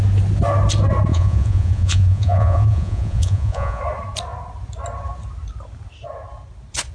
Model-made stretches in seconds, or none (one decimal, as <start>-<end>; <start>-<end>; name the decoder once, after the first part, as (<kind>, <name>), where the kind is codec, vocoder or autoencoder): 1.1-3.8 (vocoder, Vocos)